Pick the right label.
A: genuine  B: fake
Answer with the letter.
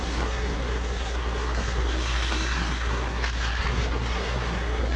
B